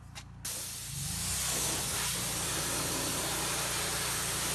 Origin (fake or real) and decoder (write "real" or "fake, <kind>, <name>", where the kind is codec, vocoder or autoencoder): real